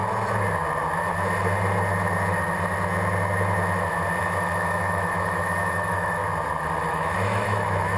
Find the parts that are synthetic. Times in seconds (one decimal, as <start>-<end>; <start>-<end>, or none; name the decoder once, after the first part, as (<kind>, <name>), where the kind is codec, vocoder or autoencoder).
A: 4.2-6.2 (autoencoder, DAC-VAE); 6.9-8.0